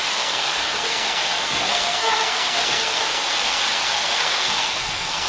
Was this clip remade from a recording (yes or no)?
yes